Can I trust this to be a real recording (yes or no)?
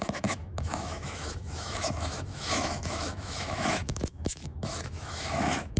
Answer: no